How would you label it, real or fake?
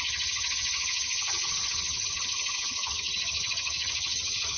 fake